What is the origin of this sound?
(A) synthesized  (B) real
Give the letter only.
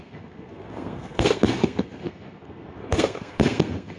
A